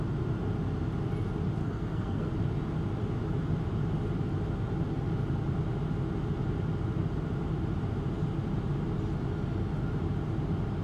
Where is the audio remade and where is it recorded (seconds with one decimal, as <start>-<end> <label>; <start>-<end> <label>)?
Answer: 0.0-1.6 recorded; 1.6-2.3 remade; 2.3-10.8 recorded